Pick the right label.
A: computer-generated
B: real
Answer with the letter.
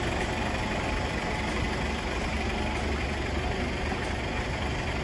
B